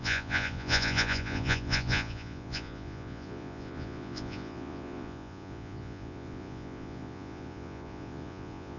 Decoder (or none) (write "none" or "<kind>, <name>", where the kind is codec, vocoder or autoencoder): vocoder, Vocos